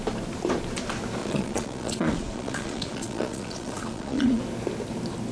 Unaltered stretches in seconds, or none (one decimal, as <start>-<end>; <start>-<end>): 0.0-1.2; 4.4-5.3